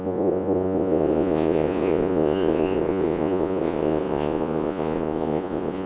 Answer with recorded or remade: remade